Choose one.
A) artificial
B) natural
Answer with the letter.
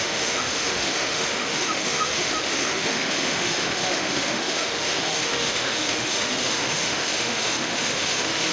A